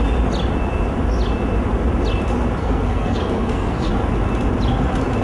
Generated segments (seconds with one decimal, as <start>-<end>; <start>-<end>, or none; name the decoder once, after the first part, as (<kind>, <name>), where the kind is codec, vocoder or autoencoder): 2.6-3.9 (codec, SNAC)